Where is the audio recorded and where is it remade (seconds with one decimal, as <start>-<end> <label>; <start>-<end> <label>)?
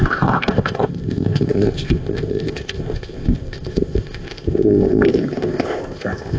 0.0-6.4 remade